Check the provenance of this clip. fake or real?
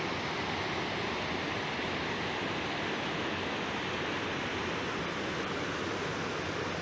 real